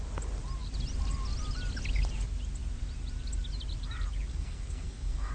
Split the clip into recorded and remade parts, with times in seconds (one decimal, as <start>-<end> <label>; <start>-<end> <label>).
0.0-4.3 recorded; 4.3-5.3 remade